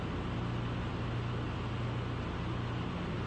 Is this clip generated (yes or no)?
no